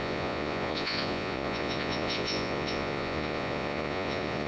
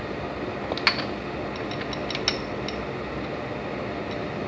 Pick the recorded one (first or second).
second